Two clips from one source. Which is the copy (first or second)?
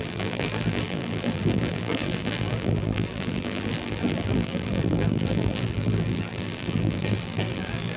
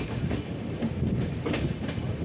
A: first